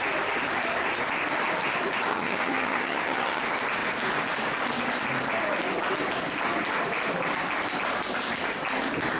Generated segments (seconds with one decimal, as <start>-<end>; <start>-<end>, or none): 2.1-3.4

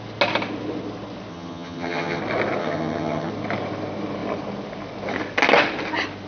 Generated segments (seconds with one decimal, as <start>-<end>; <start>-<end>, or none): 1.3-2.2; 2.6-3.3

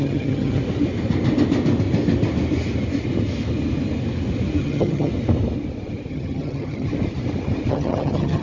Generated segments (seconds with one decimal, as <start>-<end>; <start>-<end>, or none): 0.0-0.6; 4.6-5.1; 6.1-6.9; 7.7-8.4